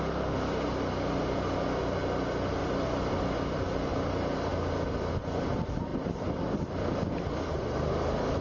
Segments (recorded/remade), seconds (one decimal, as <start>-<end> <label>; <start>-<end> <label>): 0.0-2.6 recorded; 2.6-3.2 remade; 3.2-5.9 recorded; 5.9-7.5 remade; 7.5-8.4 recorded